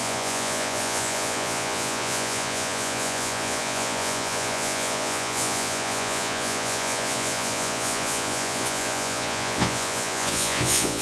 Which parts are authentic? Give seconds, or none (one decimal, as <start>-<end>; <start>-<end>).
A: none